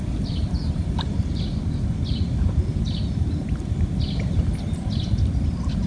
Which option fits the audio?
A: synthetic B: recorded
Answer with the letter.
A